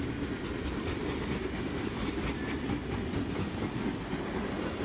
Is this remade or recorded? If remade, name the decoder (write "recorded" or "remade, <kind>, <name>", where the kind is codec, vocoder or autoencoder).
recorded